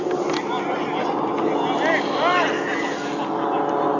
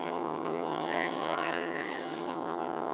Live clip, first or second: first